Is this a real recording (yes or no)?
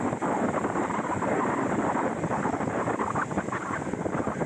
yes